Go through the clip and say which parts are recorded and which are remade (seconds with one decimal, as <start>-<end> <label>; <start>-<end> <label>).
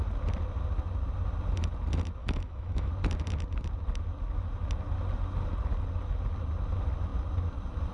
0.0-2.2 recorded; 2.2-2.9 remade; 2.9-7.9 recorded